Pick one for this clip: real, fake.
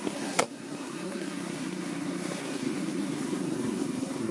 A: fake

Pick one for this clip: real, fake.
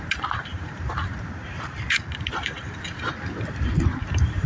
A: fake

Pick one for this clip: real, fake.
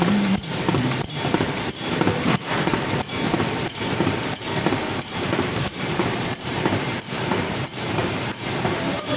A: fake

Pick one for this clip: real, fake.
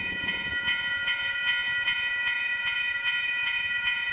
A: fake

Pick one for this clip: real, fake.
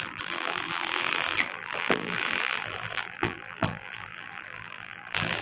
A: fake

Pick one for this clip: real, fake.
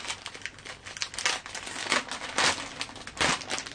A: real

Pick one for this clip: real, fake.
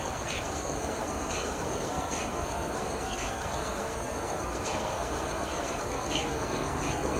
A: fake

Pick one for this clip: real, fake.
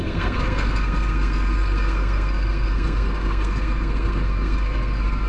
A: fake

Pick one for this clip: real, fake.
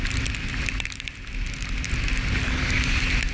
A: real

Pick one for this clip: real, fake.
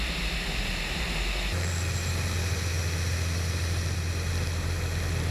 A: real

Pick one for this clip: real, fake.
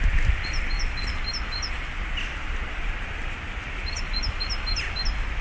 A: real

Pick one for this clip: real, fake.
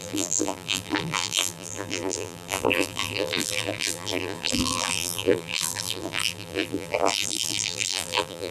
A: fake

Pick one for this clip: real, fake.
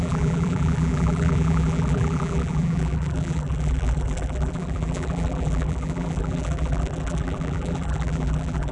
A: fake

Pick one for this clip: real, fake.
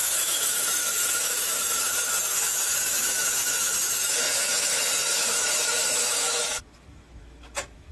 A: fake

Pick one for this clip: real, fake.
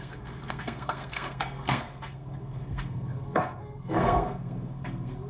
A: fake